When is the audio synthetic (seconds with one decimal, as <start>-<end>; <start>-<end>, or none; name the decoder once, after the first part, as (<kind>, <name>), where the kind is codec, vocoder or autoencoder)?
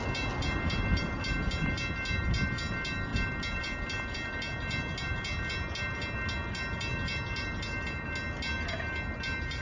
none